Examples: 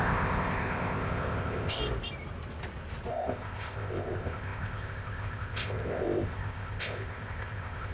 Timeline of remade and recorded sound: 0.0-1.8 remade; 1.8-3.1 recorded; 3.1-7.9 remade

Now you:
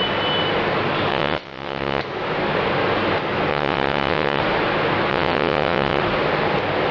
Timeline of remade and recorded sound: 0.0-1.1 recorded; 1.1-2.0 remade; 2.0-3.5 recorded; 3.5-4.4 remade; 4.4-5.1 recorded; 5.1-6.0 remade; 6.0-6.9 recorded